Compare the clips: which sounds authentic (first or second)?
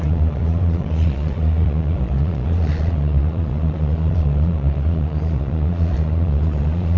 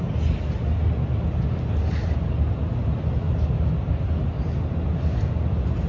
second